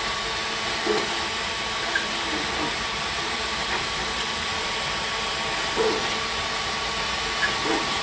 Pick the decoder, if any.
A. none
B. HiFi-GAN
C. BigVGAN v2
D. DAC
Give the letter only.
A